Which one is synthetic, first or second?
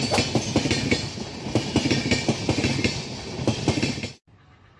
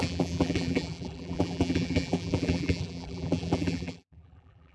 second